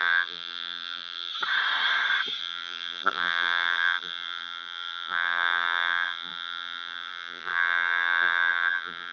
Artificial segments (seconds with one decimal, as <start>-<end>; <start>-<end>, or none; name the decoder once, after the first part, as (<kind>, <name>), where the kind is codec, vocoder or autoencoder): 0.0-1.3 (vocoder, BigVGAN v2); 2.4-9.1